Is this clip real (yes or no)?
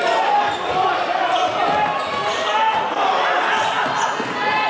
yes